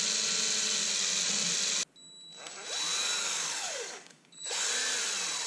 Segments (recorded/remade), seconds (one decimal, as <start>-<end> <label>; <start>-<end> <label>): 0.0-3.0 recorded; 3.0-4.7 remade; 4.7-5.5 recorded